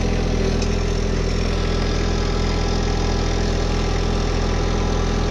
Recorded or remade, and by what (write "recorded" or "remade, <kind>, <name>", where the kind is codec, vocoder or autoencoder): recorded